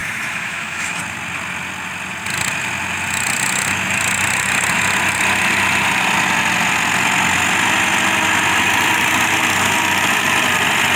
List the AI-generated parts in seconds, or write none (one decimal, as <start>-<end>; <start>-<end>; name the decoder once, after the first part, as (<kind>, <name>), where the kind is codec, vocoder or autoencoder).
0.0-1.0 (autoencoder, DAC-VAE)